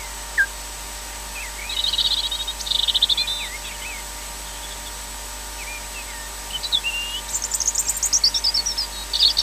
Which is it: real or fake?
real